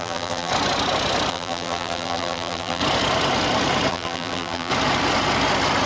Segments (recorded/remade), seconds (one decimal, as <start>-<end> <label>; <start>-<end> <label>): 0.0-0.5 remade; 0.5-1.3 recorded; 1.3-2.8 remade; 2.8-3.9 recorded; 3.9-4.7 remade; 4.7-5.9 recorded